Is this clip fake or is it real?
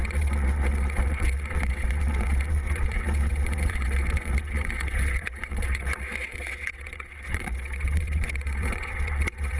fake